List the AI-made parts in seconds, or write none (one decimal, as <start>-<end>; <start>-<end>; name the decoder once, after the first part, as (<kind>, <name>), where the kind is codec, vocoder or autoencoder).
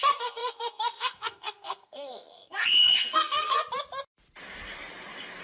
0.0-3.6 (codec, SNAC)